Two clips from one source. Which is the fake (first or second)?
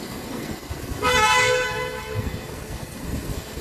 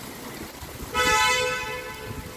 first